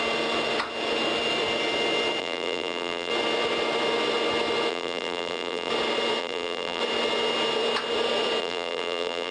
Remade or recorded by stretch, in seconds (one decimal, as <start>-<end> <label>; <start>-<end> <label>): 0.0-2.2 recorded; 2.2-3.1 remade; 3.1-4.7 recorded; 4.7-5.7 remade; 5.7-6.2 recorded; 6.2-6.8 remade; 6.8-8.4 recorded; 8.4-9.3 remade